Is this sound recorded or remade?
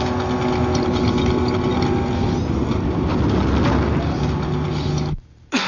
recorded